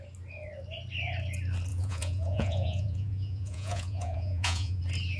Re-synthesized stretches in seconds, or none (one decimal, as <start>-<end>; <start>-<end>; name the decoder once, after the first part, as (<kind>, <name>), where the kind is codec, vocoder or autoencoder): 1.7-4.8 (vocoder, Vocos)